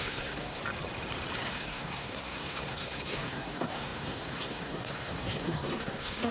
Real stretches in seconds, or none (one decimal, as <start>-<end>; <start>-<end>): 0.6-1.5